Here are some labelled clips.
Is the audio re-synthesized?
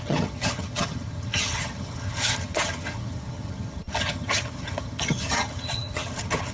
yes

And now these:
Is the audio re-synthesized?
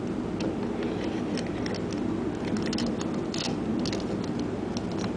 no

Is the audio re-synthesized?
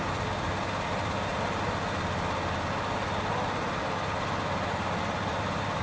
no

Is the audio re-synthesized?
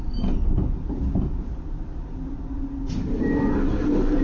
no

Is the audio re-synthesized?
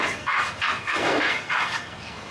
yes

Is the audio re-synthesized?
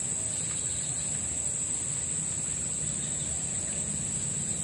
no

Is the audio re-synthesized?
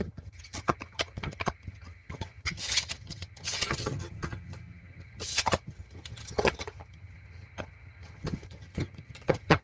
yes